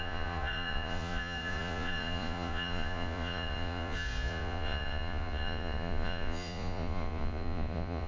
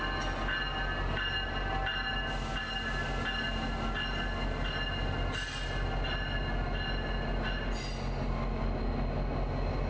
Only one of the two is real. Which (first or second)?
second